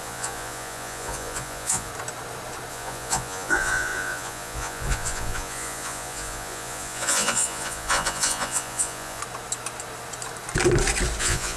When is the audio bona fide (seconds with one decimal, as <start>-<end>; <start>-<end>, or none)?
1.9-2.7; 9.2-11.2